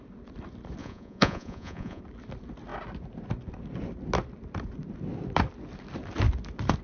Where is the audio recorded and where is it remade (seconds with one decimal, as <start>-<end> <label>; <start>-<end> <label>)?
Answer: 0.0-0.8 recorded; 0.8-2.0 remade; 2.0-6.8 recorded